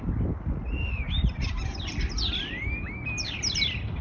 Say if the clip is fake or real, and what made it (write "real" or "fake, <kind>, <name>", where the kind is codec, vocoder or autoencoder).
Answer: real